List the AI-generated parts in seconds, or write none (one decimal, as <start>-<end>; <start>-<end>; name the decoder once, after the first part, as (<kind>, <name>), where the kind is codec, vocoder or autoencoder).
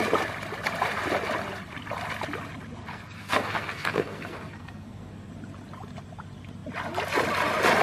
2.8-5.3 (codec, SNAC)